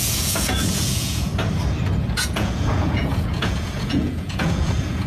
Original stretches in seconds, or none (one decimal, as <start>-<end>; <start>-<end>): 1.3-2.1